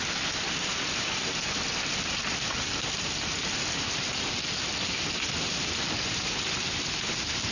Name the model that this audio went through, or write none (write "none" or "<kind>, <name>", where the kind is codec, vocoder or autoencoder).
none